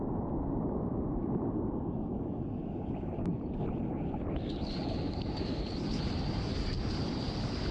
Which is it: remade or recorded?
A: recorded